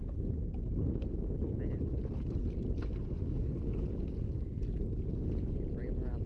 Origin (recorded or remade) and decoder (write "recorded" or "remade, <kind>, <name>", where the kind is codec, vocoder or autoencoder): recorded